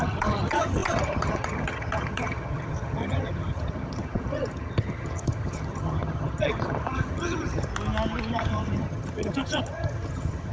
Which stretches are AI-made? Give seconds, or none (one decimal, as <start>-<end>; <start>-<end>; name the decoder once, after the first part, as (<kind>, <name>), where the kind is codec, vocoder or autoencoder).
0.0-7.7 (vocoder, HiFi-GAN); 8.3-10.5